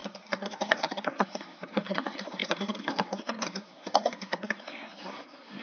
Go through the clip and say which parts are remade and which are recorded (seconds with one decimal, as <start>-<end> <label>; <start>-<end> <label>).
0.0-5.6 remade